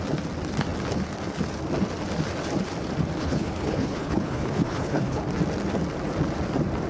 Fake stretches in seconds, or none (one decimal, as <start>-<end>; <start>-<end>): 3.2-5.2

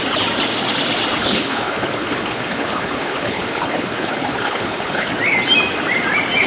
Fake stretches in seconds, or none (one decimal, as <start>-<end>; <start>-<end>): 1.2-5.1

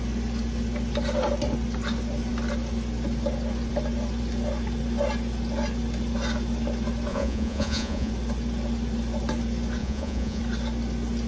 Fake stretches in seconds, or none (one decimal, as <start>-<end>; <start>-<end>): 7.1-8.1; 9.8-10.4

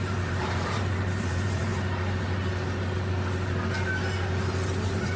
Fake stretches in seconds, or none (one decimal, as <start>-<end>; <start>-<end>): 0.0-1.7; 4.8-5.2

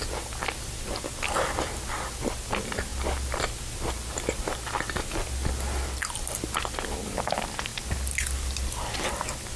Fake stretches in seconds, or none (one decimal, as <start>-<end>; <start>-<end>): none

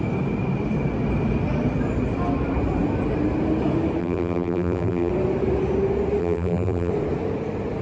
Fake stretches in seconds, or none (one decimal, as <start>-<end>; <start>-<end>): 4.0-5.1; 6.2-6.9

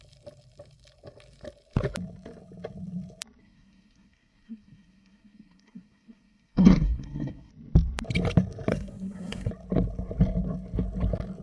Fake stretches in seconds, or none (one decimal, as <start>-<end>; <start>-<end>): 3.4-7.5; 8.7-9.5